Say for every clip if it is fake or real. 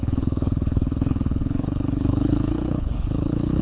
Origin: fake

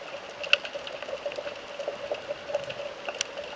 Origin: real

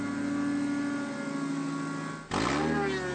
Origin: real